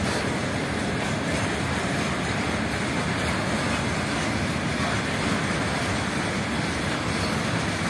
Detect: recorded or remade recorded